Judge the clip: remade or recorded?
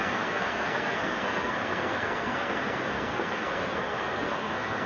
remade